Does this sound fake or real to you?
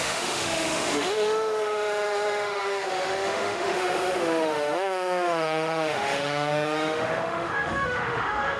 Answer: fake